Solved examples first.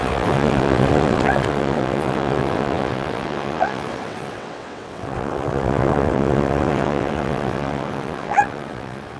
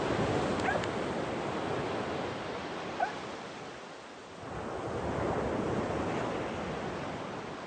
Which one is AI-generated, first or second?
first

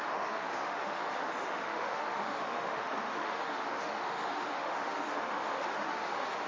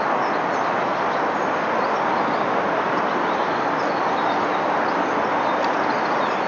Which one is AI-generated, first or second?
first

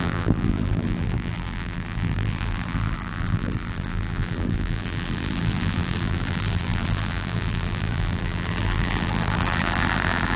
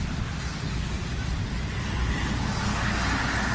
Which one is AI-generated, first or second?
first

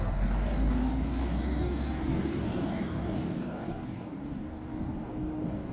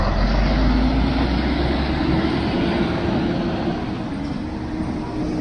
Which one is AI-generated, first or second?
first